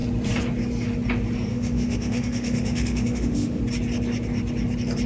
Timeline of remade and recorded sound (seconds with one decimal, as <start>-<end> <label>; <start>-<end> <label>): 0.0-1.5 recorded; 1.5-3.6 remade; 3.6-5.1 recorded